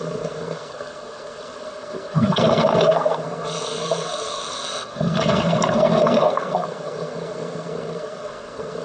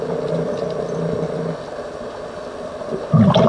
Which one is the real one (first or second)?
second